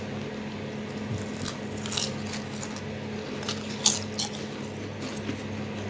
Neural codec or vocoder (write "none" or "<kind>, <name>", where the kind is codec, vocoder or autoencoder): none